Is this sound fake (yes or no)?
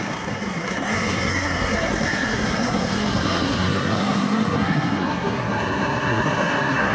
yes